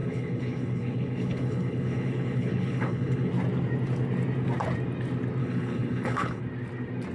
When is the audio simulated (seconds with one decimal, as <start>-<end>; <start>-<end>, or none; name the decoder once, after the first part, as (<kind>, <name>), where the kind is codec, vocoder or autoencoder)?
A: 0.0-3.3 (codec, HILCodec); 5.4-6.4